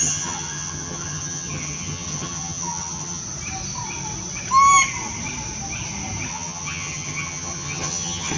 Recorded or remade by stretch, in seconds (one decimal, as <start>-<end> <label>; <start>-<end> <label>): 0.0-3.2 remade; 3.2-6.3 recorded; 6.3-8.4 remade